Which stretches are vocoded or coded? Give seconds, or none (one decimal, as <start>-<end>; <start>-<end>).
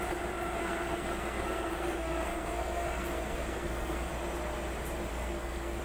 0.6-4.1; 5.1-5.8